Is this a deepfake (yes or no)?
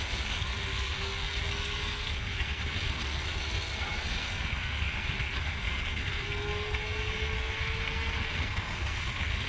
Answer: yes